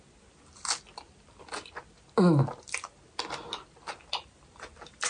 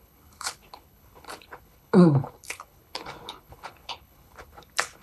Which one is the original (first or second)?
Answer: first